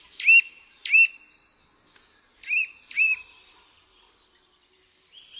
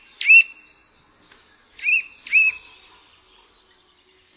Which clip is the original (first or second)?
second